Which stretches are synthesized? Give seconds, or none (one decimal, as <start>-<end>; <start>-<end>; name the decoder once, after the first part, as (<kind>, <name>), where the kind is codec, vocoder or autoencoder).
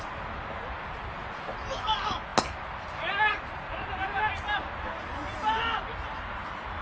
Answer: none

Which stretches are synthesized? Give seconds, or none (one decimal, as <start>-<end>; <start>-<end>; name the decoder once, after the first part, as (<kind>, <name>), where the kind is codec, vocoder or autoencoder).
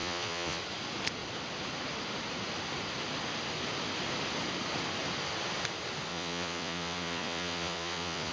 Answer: 0.0-0.6 (vocoder, Vocos); 6.1-8.3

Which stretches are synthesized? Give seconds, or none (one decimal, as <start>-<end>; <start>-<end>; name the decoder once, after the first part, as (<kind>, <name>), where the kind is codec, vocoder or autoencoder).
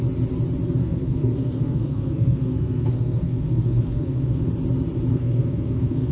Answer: 0.8-4.5 (codec, SNAC); 5.1-6.1